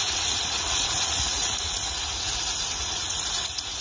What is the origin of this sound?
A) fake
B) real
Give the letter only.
A